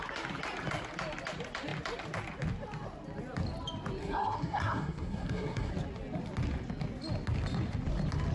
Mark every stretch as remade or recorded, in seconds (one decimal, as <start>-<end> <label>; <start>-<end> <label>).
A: 0.0-4.0 recorded; 4.0-5.7 remade; 5.7-8.3 recorded